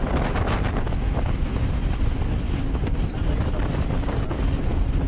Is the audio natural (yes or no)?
yes